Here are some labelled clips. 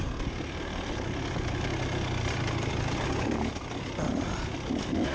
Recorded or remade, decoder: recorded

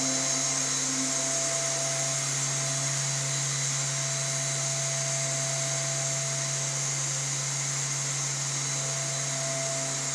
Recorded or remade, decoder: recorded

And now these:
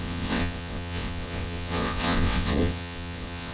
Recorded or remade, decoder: remade, vocoder, WaveNeXt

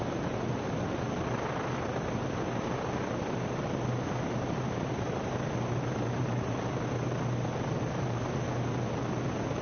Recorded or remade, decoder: recorded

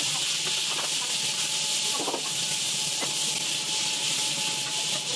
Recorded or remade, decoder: recorded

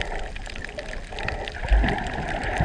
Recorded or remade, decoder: recorded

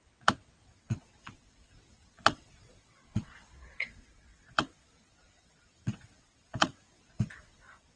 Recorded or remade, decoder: remade, vocoder, WaveNeXt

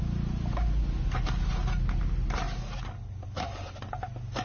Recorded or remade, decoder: recorded